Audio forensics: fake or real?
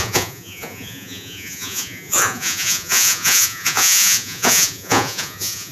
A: fake